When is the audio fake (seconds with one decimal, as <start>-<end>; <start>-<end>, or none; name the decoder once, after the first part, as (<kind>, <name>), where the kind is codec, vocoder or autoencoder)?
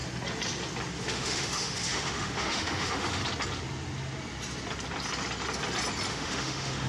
1.0-3.2 (autoencoder, DAC-VAE); 6.1-6.9